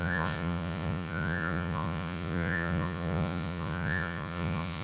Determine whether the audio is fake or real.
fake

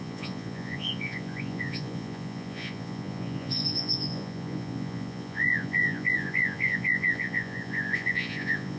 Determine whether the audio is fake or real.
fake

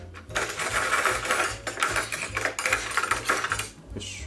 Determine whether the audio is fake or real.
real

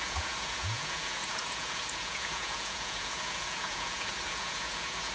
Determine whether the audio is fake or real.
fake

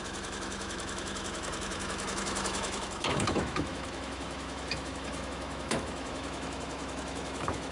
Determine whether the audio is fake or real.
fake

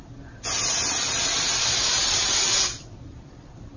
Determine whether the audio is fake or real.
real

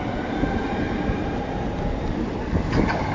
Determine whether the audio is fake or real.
real